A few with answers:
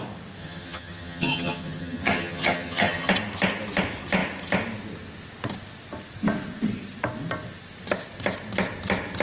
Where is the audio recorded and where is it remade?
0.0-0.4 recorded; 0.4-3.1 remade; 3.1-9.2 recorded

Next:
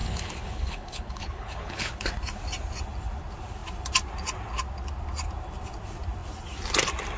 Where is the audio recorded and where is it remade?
0.0-2.1 remade; 2.1-7.2 recorded

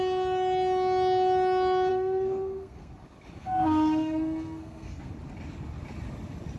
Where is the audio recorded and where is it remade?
0.0-1.9 recorded; 1.9-2.9 remade; 2.9-3.4 recorded; 3.4-5.1 remade; 5.1-6.6 recorded